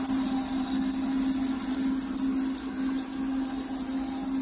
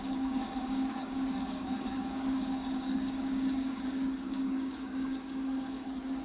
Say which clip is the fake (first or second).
second